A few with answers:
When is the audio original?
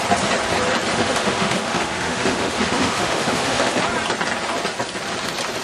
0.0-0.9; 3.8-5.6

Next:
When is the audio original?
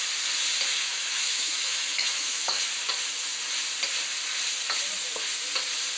0.0-0.7; 2.6-6.0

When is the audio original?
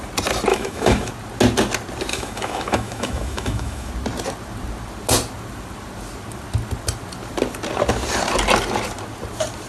0.0-0.5; 1.1-2.1; 3.9-9.7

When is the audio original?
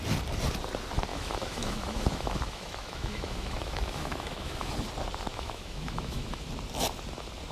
0.0-1.1; 4.7-5.3; 6.5-7.5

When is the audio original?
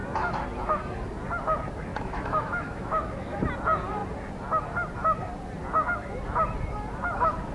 0.0-1.9; 3.4-7.5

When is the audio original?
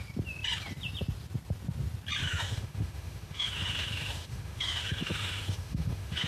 0.0-2.2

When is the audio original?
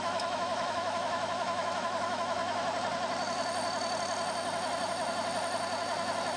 2.4-6.4